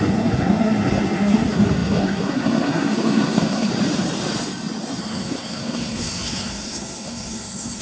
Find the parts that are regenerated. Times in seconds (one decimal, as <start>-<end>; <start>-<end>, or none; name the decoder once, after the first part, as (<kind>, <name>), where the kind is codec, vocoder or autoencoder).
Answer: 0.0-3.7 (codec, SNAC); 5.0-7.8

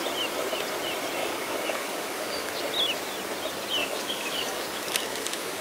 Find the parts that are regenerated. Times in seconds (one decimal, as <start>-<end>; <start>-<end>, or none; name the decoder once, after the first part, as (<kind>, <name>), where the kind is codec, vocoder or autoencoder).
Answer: 1.2-2.5 (codec, DAC); 3.8-5.6

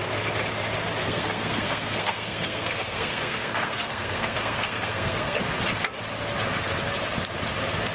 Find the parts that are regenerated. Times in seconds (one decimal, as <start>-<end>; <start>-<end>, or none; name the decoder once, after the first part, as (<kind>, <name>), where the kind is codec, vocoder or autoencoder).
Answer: 1.0-5.4 (codec, SNAC)

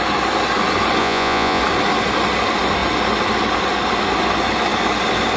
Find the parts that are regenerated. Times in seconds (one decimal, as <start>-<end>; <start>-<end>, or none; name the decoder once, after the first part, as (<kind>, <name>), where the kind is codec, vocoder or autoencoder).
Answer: 1.0-1.6 (vocoder, Vocos)

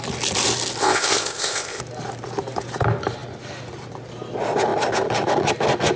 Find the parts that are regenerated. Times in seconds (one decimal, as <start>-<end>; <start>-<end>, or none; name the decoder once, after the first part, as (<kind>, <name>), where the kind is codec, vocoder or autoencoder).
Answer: 0.8-1.8 (codec, ZipCodec)

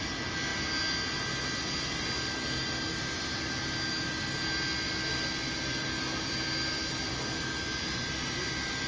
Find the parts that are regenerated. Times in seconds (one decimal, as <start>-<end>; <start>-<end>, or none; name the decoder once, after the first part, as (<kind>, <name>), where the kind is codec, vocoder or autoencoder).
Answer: none

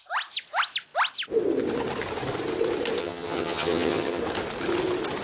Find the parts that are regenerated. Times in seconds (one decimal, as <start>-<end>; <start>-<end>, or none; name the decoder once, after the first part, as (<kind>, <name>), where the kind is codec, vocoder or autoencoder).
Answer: 3.0-4.2 (vocoder, HiFi-GAN)